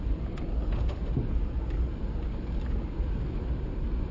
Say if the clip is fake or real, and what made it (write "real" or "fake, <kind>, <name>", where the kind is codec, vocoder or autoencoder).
real